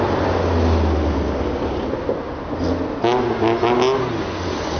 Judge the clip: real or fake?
real